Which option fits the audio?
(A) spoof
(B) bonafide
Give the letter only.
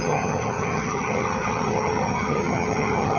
A